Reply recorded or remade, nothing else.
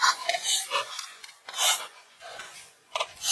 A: remade